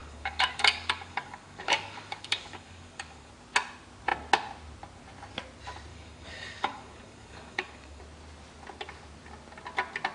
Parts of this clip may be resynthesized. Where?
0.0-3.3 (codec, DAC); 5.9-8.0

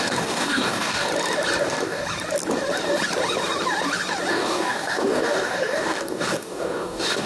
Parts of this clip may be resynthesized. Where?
0.0-1.1 (codec, DAC); 1.6-2.0; 4.3-7.3

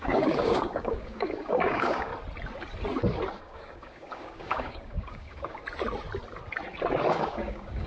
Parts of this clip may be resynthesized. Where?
0.0-2.1 (codec, DAC); 3.4-5.6; 7.1-7.9

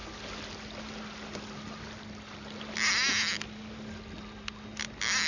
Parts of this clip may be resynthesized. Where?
none

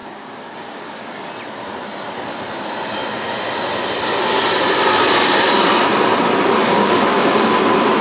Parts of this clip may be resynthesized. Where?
0.0-1.3 (codec, DAC); 6.6-7.6

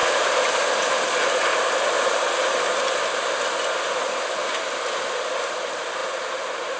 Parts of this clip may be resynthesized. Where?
none

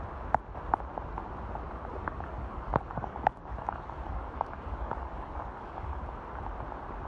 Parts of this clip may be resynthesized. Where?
1.9-6.0 (codec, DAC)

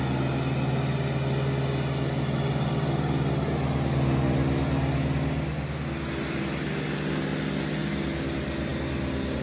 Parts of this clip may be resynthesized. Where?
none